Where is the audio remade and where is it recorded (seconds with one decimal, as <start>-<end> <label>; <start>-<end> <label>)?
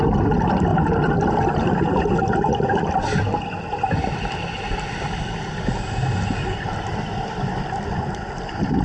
0.0-0.7 recorded; 0.7-1.3 remade; 1.3-8.8 recorded